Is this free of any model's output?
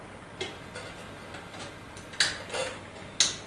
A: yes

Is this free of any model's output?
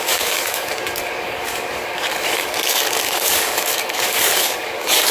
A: no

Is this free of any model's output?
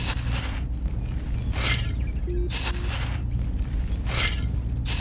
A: yes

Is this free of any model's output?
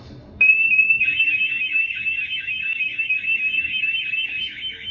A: no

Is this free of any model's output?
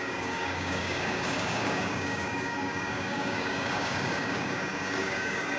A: no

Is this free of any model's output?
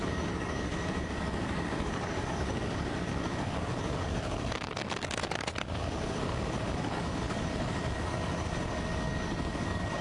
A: no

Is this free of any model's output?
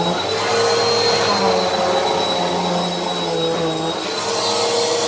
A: yes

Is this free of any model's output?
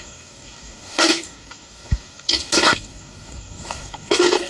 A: no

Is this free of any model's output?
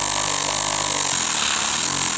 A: yes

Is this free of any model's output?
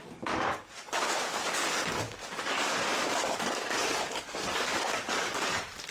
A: no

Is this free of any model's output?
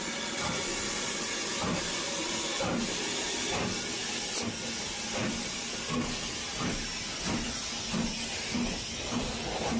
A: yes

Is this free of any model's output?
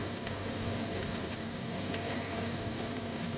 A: no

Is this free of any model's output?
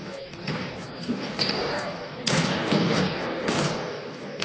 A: no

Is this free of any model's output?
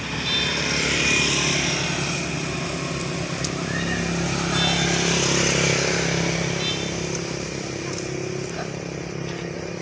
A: yes